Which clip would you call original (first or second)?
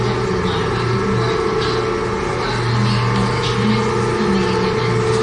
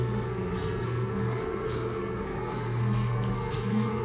first